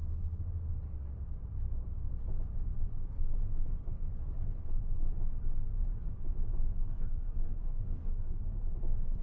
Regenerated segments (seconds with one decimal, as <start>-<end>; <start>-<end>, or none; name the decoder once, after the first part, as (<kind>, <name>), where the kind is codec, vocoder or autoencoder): 6.8-8.4 (codec, SNAC)